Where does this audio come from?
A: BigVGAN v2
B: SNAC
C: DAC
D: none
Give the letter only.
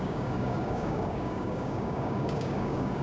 C